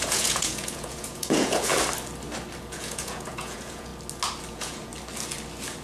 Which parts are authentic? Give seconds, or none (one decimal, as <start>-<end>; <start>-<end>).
1.7-2.6; 3.9-4.5; 4.9-5.8